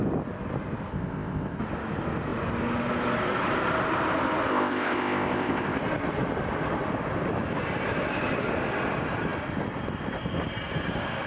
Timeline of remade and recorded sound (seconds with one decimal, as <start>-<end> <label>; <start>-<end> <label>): 0.0-0.9 recorded; 0.9-1.6 remade; 1.6-4.5 recorded; 4.5-5.8 remade; 5.8-11.3 recorded